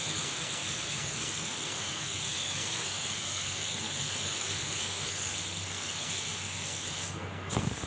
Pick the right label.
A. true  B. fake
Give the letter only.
B